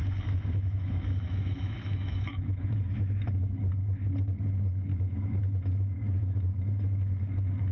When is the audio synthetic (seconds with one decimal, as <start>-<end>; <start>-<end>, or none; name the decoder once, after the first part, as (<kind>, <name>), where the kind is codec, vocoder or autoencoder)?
0.0-3.7 (autoencoder, DAC-VAE); 4.9-7.1